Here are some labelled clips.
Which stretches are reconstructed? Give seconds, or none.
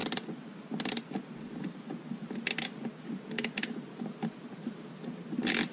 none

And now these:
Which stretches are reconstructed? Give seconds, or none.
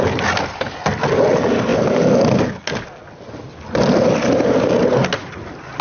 none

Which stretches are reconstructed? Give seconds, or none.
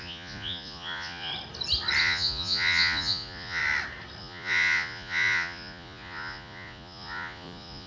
0.0-1.3 (vocoder, Vocos); 2.0-3.6; 4.2-7.9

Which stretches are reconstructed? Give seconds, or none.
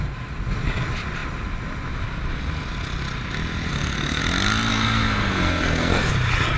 3.7-4.2 (codec, SNAC); 4.7-6.1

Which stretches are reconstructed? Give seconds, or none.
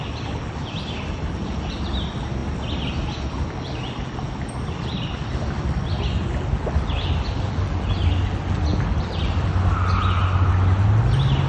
none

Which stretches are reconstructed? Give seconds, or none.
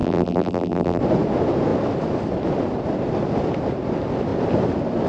0.0-1.0 (vocoder, BigVGAN v2)